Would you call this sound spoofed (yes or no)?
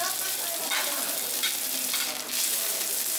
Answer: yes